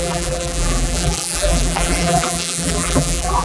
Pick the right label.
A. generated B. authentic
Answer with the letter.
A